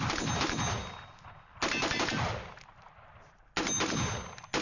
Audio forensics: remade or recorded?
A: recorded